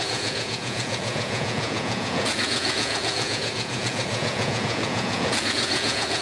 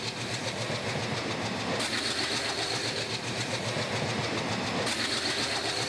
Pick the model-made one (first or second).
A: first